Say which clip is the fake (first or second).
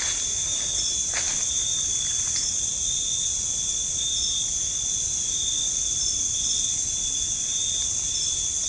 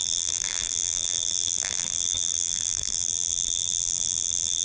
second